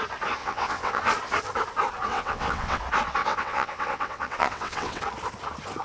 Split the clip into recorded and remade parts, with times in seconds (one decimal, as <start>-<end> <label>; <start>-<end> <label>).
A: 0.0-0.4 recorded; 0.4-1.0 remade; 1.0-2.1 recorded; 2.1-2.8 remade; 2.8-3.2 recorded; 3.2-5.0 remade; 5.0-5.8 recorded